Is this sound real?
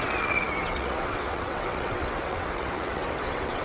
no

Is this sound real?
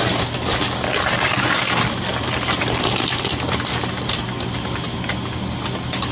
yes